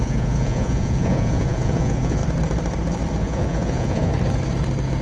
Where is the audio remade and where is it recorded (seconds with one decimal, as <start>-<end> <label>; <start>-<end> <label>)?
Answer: 0.0-2.2 remade; 2.2-3.2 recorded; 3.2-4.1 remade; 4.1-5.0 recorded